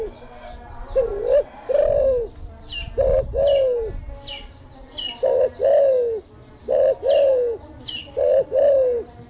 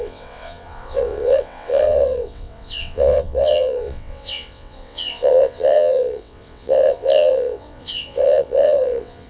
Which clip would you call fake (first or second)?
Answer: second